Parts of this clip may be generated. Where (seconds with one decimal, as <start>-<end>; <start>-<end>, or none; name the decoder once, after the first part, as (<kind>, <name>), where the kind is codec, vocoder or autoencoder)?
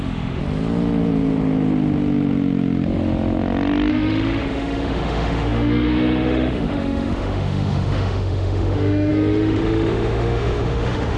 0.0-0.4 (autoencoder, DAC-VAE); 3.9-11.2